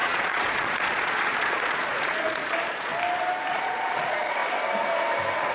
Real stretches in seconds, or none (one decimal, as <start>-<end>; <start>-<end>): 2.9-3.5; 4.4-5.5